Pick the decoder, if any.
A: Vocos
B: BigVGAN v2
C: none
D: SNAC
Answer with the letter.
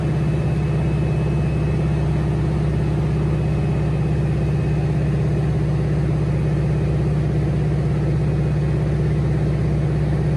C